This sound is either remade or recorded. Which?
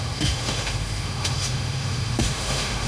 remade